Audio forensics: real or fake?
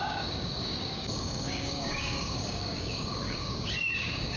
fake